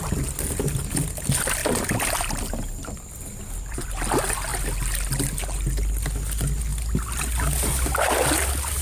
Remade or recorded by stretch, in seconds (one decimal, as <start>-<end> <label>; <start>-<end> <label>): 0.0-8.8 recorded